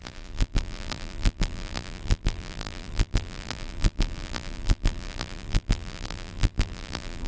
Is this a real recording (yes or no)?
no